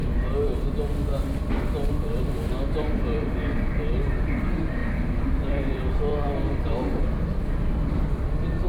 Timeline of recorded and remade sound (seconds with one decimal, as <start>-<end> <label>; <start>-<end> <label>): 0.0-1.9 recorded; 1.9-4.8 remade; 4.8-5.4 recorded; 5.4-8.7 remade